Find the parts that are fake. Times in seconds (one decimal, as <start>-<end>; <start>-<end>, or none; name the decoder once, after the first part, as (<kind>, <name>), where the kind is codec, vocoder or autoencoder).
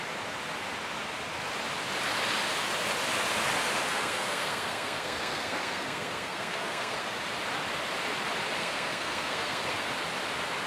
3.9-7.2 (codec, SNAC); 8.6-9.9